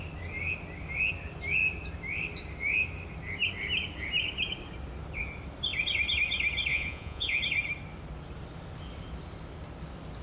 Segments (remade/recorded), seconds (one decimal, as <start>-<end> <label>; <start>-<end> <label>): 0.0-6.7 recorded; 6.7-7.4 remade; 7.4-10.2 recorded